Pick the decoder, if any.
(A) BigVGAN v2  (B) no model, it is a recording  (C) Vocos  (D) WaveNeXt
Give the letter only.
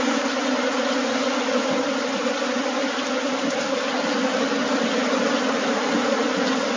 B